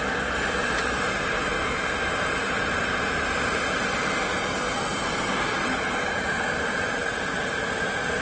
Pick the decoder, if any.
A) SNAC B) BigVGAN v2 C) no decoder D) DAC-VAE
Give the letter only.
C